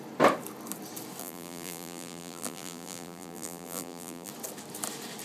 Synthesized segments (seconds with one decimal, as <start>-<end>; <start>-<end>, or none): 1.2-4.3